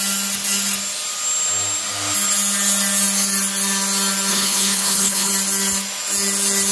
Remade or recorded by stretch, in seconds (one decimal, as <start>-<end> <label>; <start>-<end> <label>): 0.0-4.3 recorded; 4.3-5.3 remade; 5.3-6.7 recorded